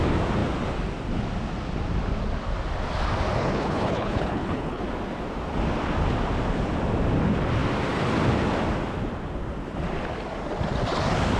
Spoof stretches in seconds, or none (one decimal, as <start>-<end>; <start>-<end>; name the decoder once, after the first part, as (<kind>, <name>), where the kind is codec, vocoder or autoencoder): 3.4-4.8 (codec, HILCodec)

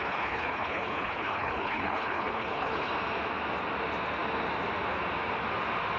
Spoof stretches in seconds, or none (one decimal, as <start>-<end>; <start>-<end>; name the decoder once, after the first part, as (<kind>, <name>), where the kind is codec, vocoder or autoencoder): 0.0-2.9 (codec, HILCodec)

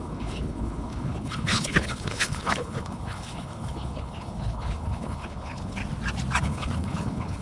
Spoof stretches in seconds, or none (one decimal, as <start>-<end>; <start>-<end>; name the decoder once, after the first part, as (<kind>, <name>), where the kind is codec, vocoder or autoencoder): 0.0-5.8 (codec, HILCodec); 6.4-7.4

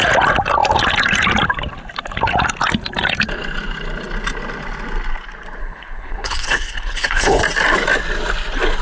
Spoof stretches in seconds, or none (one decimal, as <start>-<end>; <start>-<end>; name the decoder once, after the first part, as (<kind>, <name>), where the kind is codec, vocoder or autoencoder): 5.6-7.4 (codec, HILCodec)

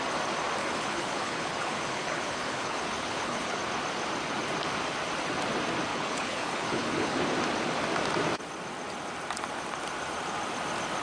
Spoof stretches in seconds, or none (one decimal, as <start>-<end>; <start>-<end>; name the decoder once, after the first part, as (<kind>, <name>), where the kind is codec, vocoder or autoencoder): 0.6-3.6 (codec, HILCodec); 5.9-7.2